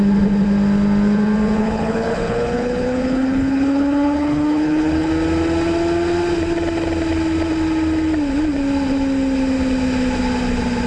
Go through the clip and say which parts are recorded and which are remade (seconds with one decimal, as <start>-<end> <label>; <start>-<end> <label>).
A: 0.0-1.6 recorded; 1.6-5.1 remade; 5.1-10.9 recorded